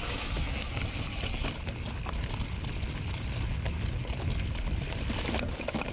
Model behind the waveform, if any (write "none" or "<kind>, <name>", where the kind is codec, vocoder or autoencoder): none